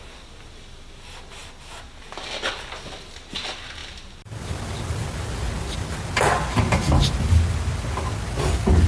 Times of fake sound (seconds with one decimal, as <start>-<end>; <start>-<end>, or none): none